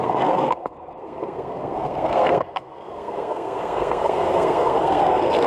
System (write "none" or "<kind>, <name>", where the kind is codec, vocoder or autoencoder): codec, SNAC